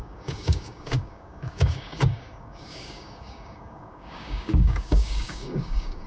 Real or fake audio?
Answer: fake